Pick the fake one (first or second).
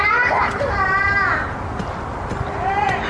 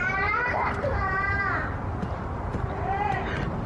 second